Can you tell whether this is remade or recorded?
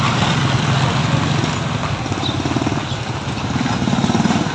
recorded